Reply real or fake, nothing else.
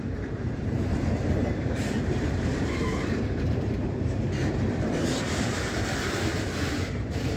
fake